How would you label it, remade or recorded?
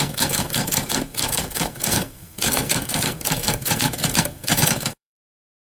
remade